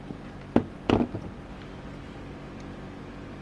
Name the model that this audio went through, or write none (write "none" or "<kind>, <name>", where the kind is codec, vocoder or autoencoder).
none